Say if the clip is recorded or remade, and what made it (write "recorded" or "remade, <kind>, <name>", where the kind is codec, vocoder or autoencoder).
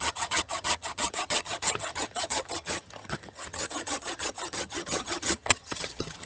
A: remade, vocoder, HiFi-GAN